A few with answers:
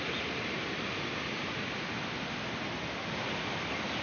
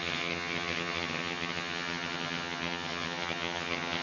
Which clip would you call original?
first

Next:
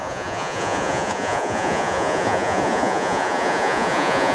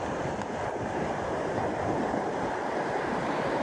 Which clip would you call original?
second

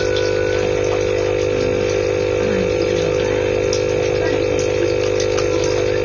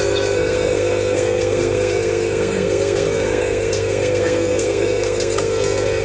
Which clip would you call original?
first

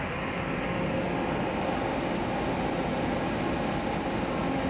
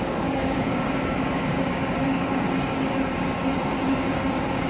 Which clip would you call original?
first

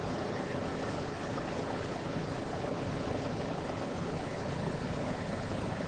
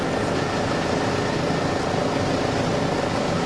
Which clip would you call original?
second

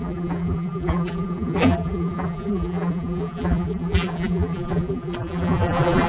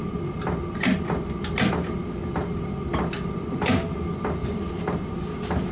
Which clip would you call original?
second